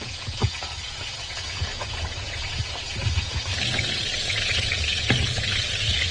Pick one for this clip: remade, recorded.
remade